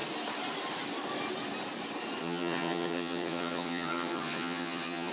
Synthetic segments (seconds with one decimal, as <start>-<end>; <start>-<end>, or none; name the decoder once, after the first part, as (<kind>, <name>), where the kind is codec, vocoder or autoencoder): 2.2-5.1 (vocoder, HiFi-GAN)